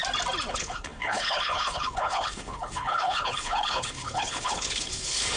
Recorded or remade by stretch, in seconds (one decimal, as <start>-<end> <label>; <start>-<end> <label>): 0.0-0.5 recorded; 0.5-5.4 remade